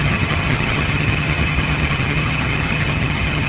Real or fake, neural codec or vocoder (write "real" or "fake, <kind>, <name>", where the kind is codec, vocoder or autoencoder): fake, vocoder, HiFi-GAN